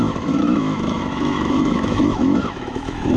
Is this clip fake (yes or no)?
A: yes